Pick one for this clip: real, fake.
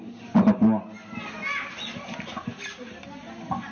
real